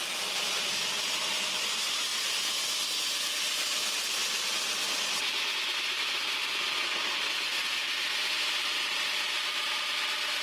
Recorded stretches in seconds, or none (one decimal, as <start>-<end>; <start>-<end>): 0.0-8.1; 8.8-10.4